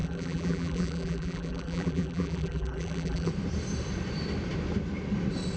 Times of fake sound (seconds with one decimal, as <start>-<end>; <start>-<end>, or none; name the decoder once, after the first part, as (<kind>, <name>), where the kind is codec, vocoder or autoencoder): 0.0-3.3 (vocoder, BigVGAN v2)